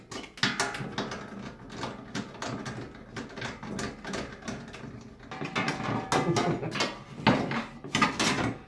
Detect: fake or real real